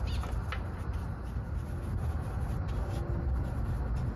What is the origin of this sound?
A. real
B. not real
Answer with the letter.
A